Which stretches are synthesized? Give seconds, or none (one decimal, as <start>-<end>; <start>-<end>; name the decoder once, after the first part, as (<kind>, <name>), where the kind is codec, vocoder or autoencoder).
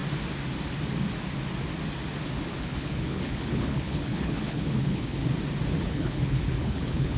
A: 2.5-5.2 (codec, HILCodec); 5.8-7.2